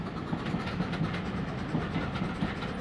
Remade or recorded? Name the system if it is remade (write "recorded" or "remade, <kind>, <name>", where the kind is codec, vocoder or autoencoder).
recorded